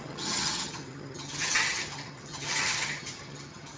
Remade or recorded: remade